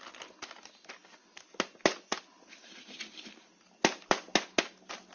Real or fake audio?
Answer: real